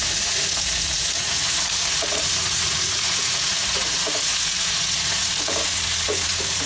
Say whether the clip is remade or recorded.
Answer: remade